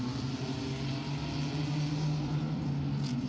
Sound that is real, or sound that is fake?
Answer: real